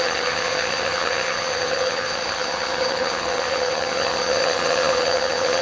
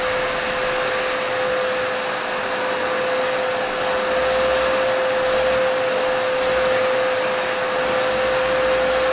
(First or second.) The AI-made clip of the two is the first